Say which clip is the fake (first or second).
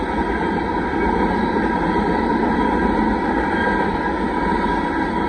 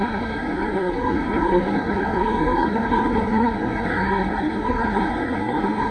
second